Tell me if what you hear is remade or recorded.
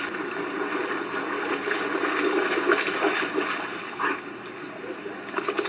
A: recorded